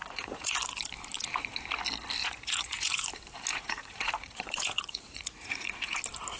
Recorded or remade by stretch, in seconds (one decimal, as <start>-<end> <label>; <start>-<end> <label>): 0.0-0.5 remade; 0.5-2.2 recorded; 2.2-3.1 remade; 3.1-3.5 recorded; 3.5-6.0 remade; 6.0-6.4 recorded